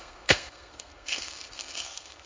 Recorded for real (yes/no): no